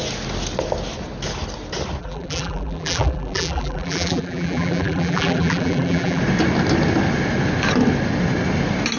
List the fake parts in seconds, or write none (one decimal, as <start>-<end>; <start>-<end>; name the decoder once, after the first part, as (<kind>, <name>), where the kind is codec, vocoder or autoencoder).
2.0-6.2 (vocoder, BigVGAN v2)